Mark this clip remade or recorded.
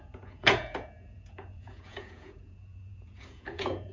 remade